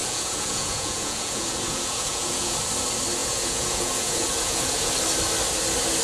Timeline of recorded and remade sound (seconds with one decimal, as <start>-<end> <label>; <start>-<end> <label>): 0.0-2.5 remade; 2.5-3.2 recorded; 3.2-4.9 remade; 4.9-6.0 recorded

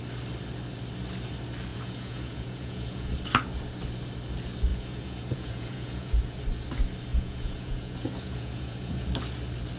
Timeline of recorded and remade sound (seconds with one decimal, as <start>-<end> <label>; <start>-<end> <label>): 0.0-1.7 recorded; 1.7-3.1 remade; 3.1-4.7 recorded; 4.7-6.4 remade; 6.4-7.1 recorded; 7.1-9.1 remade; 9.1-9.8 recorded

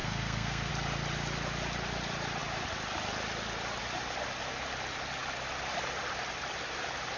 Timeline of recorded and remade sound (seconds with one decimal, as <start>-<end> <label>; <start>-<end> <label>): 0.0-0.7 remade; 0.7-7.2 recorded